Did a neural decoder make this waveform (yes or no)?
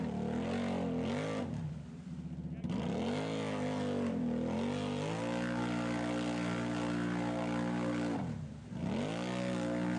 no